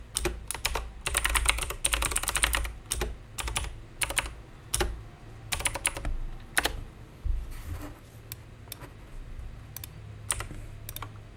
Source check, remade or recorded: recorded